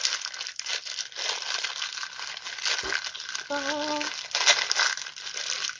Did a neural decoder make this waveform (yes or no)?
no